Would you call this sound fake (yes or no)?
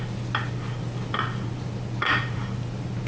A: no